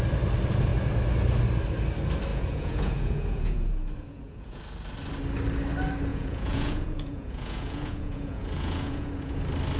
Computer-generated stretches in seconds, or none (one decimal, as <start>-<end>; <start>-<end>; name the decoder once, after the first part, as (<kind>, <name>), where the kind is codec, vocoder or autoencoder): 2.3-4.6 (vocoder, Vocos); 6.1-9.4